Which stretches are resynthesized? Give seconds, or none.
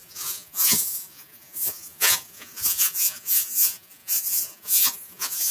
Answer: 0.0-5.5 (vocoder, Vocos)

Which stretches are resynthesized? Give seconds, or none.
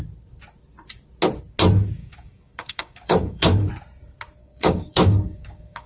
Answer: 2.0-3.7 (codec, DAC); 4.4-5.9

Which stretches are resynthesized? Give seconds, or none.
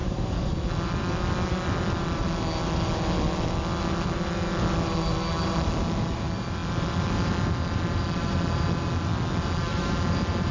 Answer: 0.0-0.5 (codec, DAC)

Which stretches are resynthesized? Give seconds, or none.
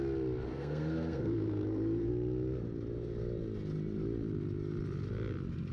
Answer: 0.5-2.1 (codec, SNAC)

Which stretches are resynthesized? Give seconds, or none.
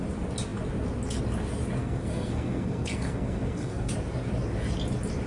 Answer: 1.8-3.9 (codec, SNAC)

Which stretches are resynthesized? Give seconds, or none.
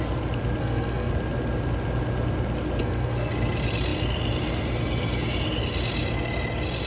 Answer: 0.6-1.1 (codec, SNAC); 2.8-3.3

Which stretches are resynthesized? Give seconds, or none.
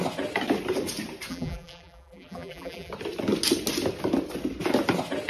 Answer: 1.3-2.9 (vocoder, BigVGAN v2)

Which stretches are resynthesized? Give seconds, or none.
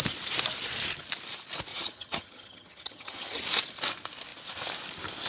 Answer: 1.7-3.4 (vocoder, HiFi-GAN)